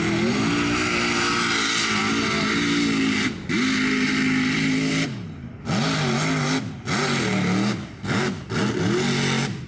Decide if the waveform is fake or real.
real